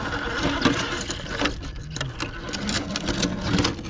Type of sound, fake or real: real